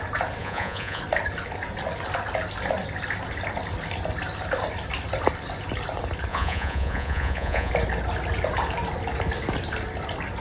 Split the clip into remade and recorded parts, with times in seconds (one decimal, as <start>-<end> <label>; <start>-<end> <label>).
0.0-0.4 recorded; 0.4-1.0 remade; 1.0-6.3 recorded; 6.3-7.7 remade; 7.7-10.4 recorded